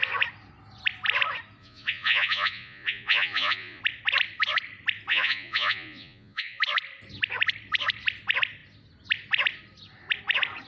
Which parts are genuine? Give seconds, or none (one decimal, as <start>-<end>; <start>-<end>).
0.0-1.6; 3.8-5.1; 6.6-10.7